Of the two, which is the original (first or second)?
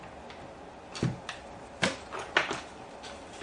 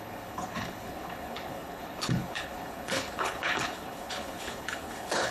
first